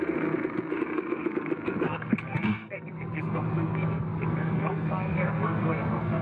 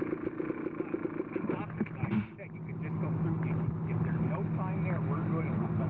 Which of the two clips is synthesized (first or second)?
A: first